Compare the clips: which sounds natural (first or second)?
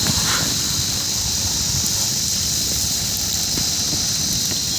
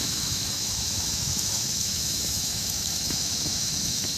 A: first